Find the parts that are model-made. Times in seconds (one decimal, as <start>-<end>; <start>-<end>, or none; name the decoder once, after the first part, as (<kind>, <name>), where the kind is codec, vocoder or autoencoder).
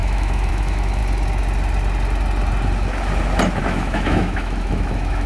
0.0-1.0 (autoencoder, DAC-VAE); 3.6-5.3